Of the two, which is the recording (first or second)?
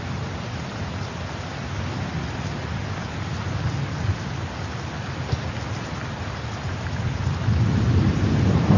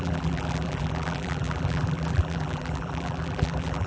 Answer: first